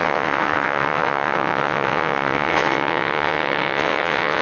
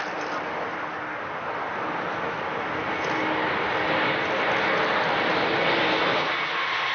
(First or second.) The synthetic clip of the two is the first